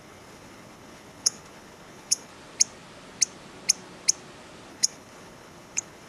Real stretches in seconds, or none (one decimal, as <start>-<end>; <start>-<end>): 2.3-4.7

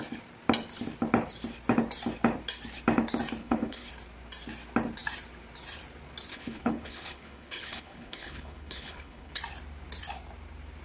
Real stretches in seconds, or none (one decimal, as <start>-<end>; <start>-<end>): 0.0-3.4; 3.9-6.3; 9.4-10.8

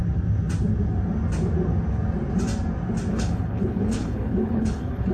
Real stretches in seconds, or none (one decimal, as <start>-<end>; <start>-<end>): 0.0-3.1

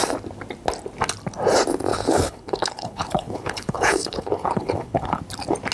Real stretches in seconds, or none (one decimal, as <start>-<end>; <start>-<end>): 0.0-1.9; 5.2-5.7

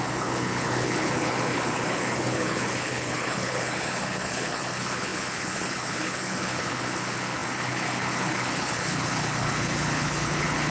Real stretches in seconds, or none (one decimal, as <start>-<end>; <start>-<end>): none

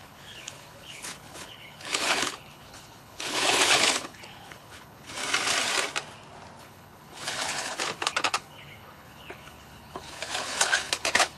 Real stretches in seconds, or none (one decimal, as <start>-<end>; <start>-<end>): 5.2-6.6

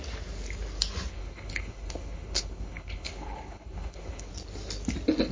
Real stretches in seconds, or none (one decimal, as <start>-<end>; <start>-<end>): 0.0-1.1; 4.3-5.3

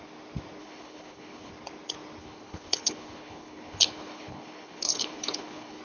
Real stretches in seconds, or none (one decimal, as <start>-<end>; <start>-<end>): 0.0-0.6; 1.5-2.2